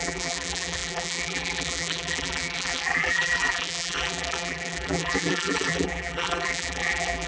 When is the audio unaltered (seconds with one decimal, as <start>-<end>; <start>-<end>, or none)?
none